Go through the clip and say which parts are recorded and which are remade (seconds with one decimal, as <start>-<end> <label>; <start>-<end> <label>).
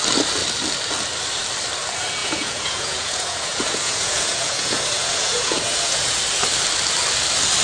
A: 0.0-2.2 recorded; 2.2-6.2 remade; 6.2-7.6 recorded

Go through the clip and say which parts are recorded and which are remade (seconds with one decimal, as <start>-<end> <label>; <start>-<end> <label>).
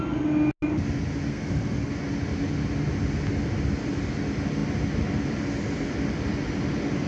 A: 0.0-1.3 recorded; 1.3-1.9 remade; 1.9-7.1 recorded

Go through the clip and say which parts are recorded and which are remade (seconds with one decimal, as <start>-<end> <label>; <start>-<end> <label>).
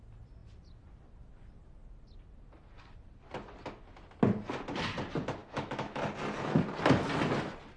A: 0.0-5.4 recorded; 5.4-6.0 remade; 6.0-7.8 recorded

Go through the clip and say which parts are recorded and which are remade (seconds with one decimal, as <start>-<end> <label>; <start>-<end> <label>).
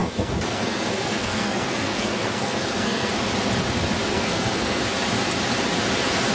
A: 0.0-3.1 remade; 3.1-4.1 recorded; 4.1-4.8 remade; 4.8-6.3 recorded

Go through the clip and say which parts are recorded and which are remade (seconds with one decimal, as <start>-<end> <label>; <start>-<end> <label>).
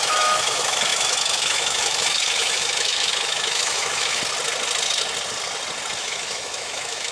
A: 0.0-4.2 remade; 4.2-6.0 recorded; 6.0-7.1 remade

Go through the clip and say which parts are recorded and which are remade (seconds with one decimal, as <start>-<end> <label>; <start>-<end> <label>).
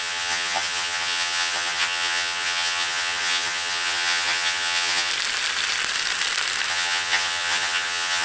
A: 0.0-5.1 remade; 5.1-6.7 recorded; 6.7-8.2 remade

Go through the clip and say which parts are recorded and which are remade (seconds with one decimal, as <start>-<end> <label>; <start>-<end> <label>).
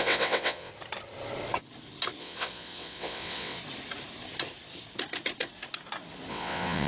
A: 0.0-0.7 remade; 0.7-2.2 recorded; 2.2-3.6 remade; 3.6-6.3 recorded; 6.3-6.9 remade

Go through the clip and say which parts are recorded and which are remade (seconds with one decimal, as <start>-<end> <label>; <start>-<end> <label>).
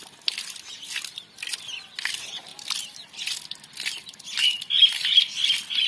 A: 0.0-2.5 recorded; 2.5-4.2 remade; 4.2-5.9 recorded